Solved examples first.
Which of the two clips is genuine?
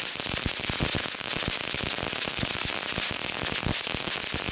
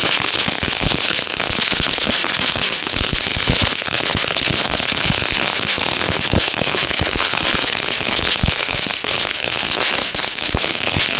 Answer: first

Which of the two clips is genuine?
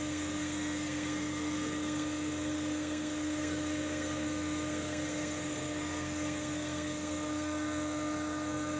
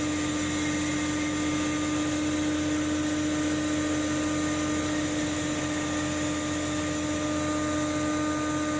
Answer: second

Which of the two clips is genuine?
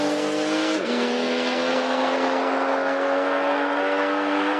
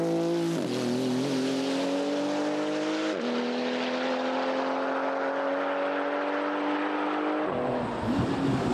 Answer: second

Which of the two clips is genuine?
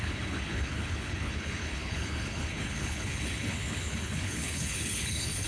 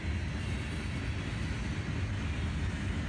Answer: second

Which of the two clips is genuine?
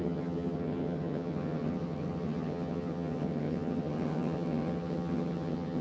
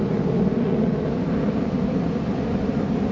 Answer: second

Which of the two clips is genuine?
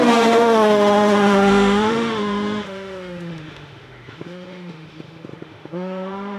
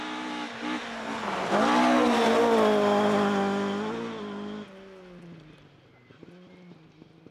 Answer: second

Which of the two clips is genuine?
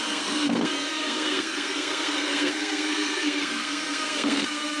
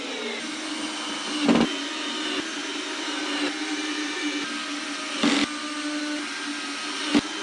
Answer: second